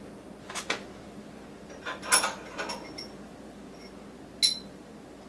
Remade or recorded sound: recorded